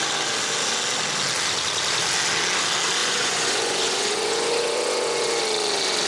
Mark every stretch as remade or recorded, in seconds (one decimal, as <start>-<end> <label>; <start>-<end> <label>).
0.0-3.0 recorded; 3.0-5.4 remade; 5.4-6.1 recorded